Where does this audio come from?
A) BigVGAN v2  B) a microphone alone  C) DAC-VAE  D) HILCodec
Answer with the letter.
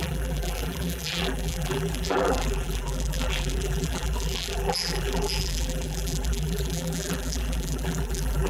A